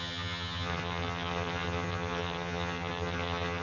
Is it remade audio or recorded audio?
remade